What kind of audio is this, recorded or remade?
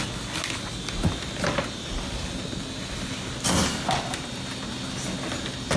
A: recorded